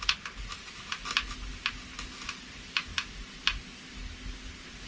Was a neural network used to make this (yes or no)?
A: no